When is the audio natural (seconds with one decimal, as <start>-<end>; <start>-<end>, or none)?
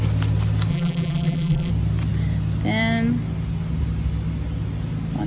0.0-0.7; 1.7-5.3